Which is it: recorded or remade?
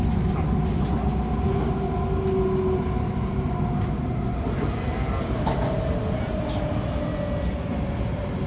recorded